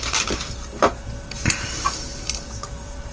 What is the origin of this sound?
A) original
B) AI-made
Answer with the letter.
B